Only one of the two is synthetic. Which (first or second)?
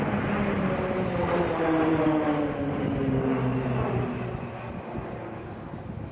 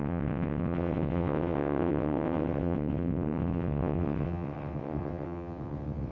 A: second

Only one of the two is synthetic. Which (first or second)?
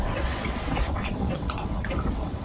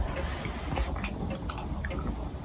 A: first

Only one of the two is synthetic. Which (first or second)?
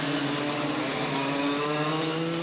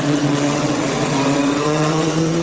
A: second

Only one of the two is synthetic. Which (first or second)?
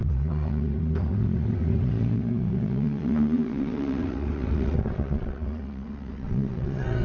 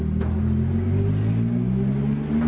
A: first